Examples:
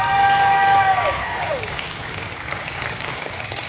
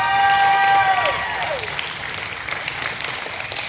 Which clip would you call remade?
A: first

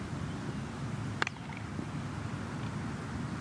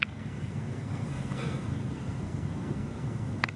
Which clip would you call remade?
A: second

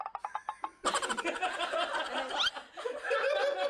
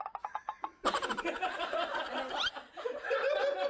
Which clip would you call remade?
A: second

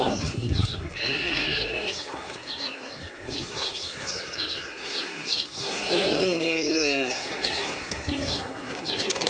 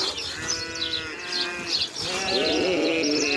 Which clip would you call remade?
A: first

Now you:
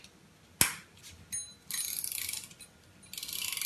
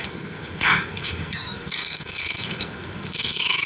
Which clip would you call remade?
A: second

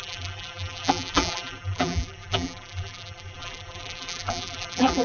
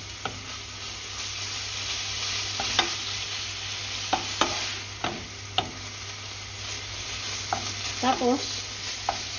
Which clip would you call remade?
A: first